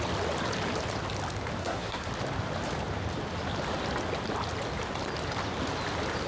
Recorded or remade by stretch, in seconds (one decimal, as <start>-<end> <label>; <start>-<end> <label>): 0.0-1.6 recorded; 1.6-2.1 remade; 2.1-6.3 recorded